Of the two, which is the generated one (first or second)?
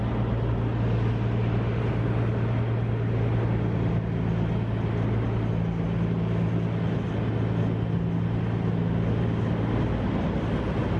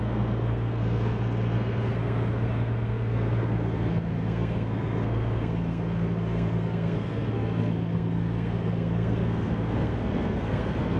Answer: second